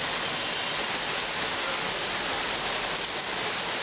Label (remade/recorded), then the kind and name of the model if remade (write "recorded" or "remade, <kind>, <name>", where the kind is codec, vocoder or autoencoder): recorded